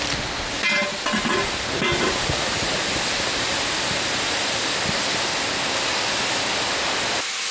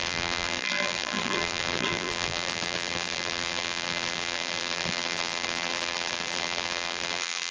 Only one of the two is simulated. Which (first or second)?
second